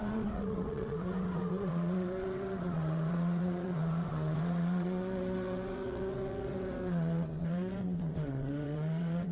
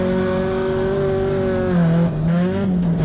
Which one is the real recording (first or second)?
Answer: second